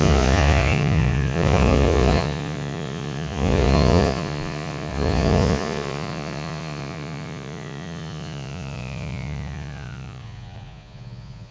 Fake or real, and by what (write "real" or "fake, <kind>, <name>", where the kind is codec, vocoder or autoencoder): fake, vocoder, Vocos